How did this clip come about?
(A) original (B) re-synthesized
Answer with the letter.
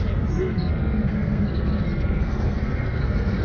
B